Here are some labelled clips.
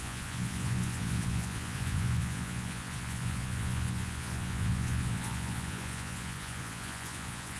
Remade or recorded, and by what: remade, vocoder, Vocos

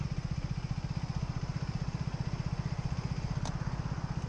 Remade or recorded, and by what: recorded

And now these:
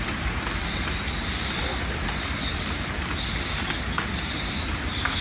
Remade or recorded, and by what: recorded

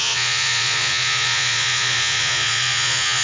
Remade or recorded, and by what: remade, vocoder, Vocos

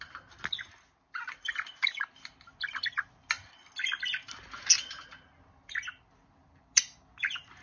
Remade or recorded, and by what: recorded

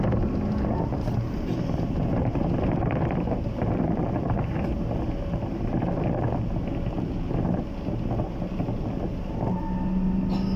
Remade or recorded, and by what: recorded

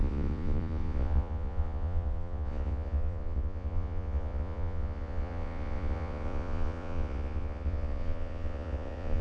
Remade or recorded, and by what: remade, vocoder, Vocos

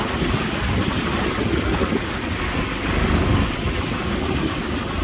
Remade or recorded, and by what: recorded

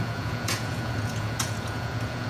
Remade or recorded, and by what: remade, vocoder, Vocos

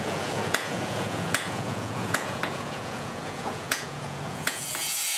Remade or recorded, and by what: remade, vocoder, Vocos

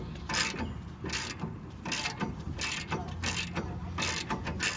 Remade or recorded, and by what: recorded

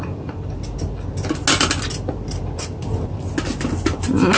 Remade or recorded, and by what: recorded